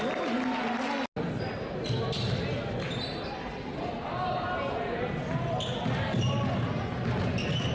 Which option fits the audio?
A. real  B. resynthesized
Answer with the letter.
A